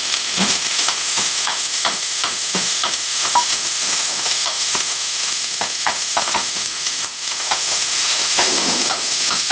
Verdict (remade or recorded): remade